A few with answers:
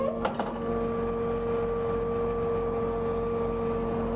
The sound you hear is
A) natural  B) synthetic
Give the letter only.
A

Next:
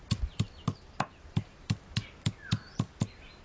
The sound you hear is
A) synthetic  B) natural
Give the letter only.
B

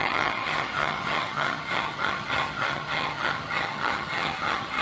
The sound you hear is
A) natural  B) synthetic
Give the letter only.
B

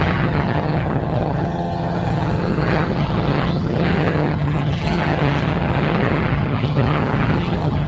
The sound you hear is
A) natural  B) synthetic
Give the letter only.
B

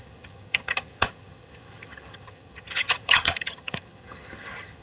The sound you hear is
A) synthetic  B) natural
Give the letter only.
A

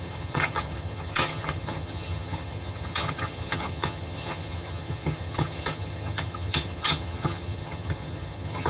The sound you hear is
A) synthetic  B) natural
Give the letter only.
A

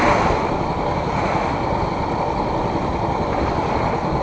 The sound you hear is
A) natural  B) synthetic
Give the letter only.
A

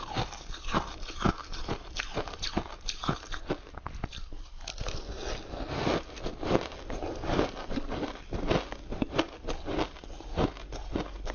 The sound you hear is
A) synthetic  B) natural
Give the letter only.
B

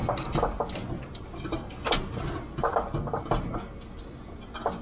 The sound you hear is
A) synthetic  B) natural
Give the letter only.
B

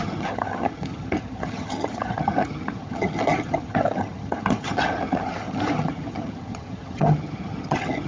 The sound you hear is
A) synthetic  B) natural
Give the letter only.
A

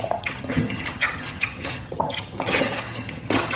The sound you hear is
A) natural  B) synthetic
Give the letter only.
B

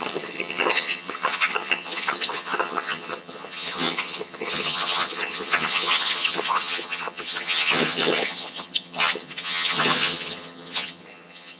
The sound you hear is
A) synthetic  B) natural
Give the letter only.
A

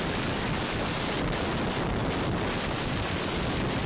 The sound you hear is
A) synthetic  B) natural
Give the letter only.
B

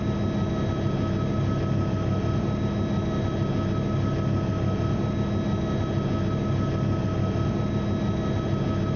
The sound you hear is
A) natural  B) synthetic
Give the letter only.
A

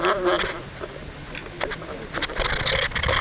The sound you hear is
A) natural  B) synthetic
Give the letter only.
A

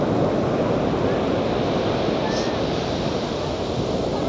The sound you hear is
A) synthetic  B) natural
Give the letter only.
B